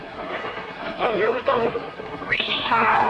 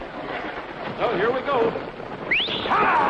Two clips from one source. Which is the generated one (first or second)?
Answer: first